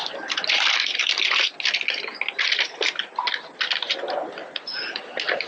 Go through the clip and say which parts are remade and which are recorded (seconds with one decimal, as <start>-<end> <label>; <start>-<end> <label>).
0.0-4.4 recorded; 4.4-5.0 remade; 5.0-5.5 recorded